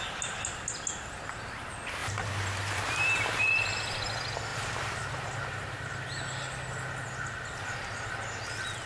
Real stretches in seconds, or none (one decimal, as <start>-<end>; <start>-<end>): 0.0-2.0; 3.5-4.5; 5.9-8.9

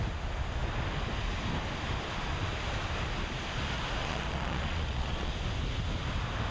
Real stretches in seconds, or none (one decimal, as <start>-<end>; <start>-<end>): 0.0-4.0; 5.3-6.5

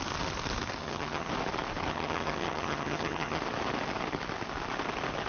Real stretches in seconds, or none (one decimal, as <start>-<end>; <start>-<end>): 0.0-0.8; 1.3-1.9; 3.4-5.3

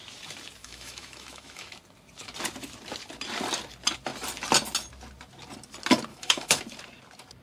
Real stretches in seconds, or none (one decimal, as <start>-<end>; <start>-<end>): 0.0-0.6; 1.7-6.1; 6.6-7.4